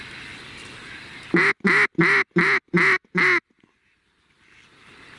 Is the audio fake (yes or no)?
no